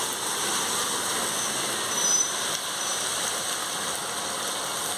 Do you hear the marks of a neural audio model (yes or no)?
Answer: yes